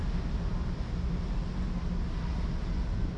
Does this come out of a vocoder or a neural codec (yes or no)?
no